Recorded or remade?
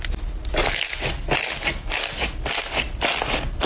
recorded